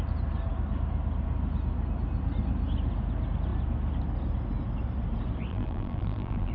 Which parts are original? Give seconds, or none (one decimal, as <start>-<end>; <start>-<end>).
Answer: 0.0-5.5